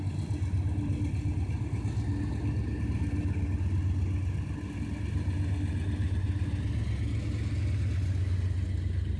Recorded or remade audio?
recorded